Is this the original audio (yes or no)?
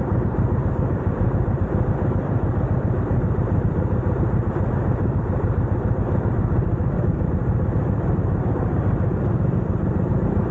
no